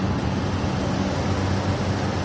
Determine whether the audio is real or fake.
real